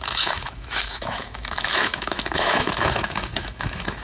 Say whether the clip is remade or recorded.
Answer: remade